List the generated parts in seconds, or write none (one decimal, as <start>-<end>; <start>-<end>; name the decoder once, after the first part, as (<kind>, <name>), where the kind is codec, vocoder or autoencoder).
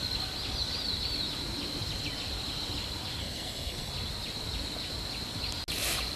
3.2-3.9 (codec, SNAC)